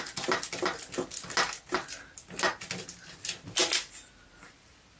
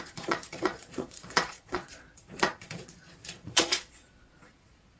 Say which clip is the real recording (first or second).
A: first